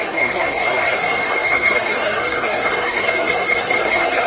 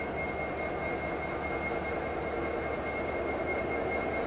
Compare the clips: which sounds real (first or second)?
second